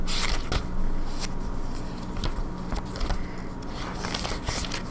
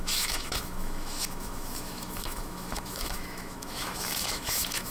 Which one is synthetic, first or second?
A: second